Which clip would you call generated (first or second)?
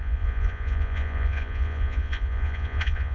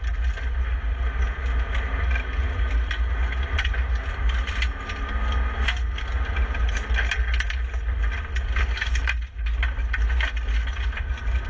first